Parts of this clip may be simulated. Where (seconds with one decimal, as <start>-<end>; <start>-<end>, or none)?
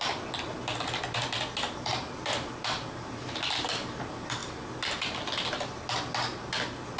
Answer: 1.9-2.5